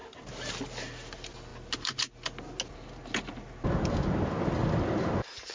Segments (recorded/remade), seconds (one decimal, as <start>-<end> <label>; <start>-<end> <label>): 0.0-5.5 recorded

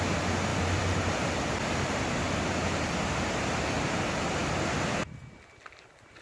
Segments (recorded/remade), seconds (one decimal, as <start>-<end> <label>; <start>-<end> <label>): 0.0-0.5 recorded; 0.5-1.3 remade; 1.3-6.2 recorded

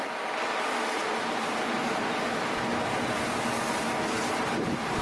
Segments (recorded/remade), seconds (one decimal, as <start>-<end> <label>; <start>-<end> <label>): 0.0-2.7 remade; 2.7-4.3 recorded; 4.3-5.0 remade